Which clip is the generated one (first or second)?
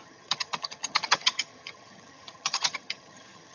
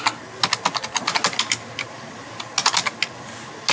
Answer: first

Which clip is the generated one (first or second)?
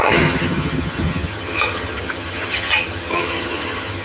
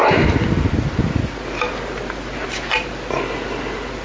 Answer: first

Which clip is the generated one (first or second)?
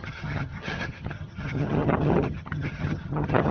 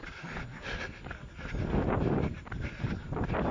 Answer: first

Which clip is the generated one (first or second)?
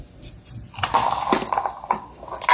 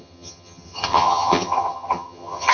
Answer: second